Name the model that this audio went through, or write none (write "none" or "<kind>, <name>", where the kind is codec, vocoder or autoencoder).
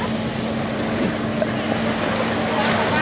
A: none